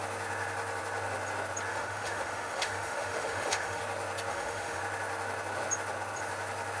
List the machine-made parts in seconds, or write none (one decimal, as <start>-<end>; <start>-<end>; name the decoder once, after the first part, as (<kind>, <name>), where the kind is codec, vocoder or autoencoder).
1.7-3.8 (autoencoder, DAC-VAE); 4.3-4.8